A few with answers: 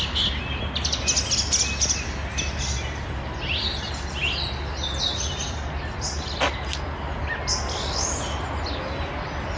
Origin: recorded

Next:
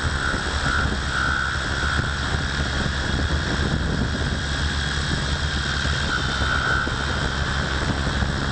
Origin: recorded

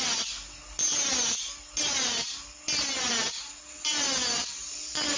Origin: recorded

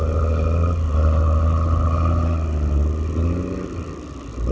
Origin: recorded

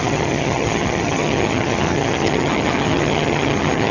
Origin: remade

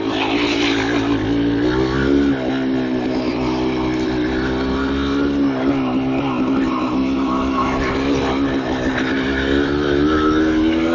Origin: recorded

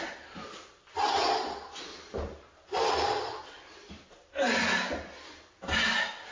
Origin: recorded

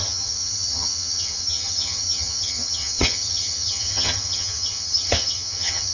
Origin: remade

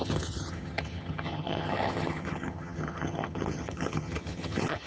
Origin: remade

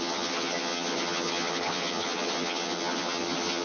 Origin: remade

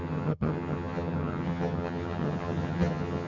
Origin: remade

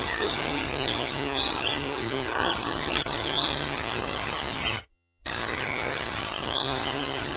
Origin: remade